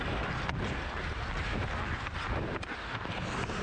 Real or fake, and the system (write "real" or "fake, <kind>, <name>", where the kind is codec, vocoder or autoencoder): real